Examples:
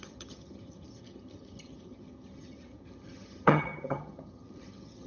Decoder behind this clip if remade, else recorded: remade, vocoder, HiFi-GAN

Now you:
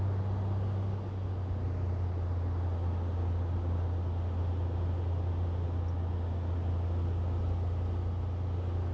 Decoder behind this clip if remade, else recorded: recorded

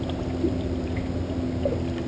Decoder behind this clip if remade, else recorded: recorded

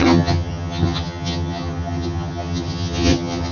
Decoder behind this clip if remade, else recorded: remade, vocoder, HiFi-GAN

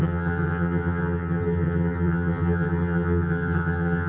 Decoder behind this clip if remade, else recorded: remade, vocoder, HiFi-GAN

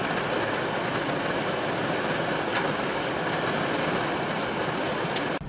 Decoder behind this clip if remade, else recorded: recorded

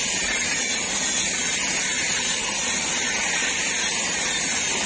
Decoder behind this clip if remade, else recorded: recorded